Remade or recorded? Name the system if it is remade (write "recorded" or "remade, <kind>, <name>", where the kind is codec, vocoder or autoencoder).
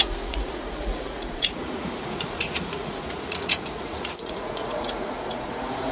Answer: remade, vocoder, Vocos